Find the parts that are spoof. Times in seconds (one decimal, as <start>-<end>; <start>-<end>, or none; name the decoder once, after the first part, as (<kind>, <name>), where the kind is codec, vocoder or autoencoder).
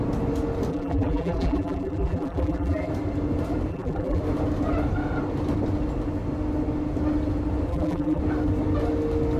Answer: 0.7-2.9 (vocoder, BigVGAN v2); 3.7-4.2; 7.7-8.2